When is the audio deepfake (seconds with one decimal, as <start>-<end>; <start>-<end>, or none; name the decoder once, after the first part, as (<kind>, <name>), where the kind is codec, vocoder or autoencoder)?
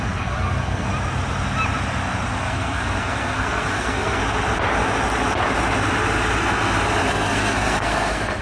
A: 0.0-0.9 (codec, SNAC); 2.4-4.2; 7.1-8.4